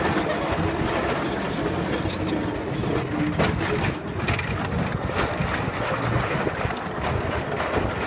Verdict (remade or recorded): recorded